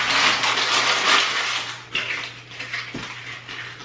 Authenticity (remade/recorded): recorded